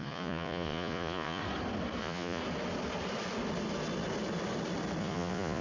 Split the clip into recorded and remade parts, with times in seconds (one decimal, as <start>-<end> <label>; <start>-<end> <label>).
0.0-1.4 remade; 1.4-2.0 recorded; 2.0-2.4 remade; 2.4-5.0 recorded; 5.0-5.6 remade